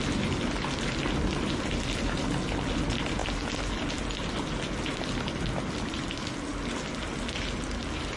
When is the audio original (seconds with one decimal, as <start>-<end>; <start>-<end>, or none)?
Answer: 0.0-8.2